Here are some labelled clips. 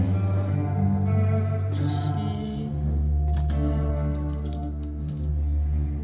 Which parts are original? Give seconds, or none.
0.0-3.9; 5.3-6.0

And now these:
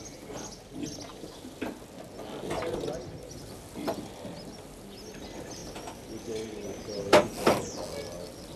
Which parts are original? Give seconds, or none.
0.0-8.6

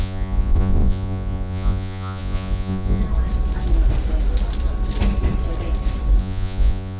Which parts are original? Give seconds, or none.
3.0-6.2

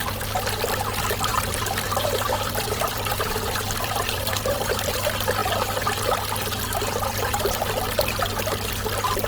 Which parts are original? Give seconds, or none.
0.0-1.3; 4.9-9.3